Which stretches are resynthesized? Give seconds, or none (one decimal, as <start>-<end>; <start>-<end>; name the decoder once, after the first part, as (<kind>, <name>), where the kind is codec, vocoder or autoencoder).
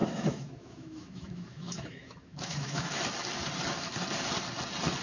0.0-3.0 (autoencoder, DAC-VAE)